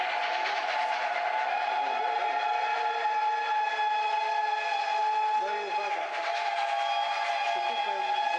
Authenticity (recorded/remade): recorded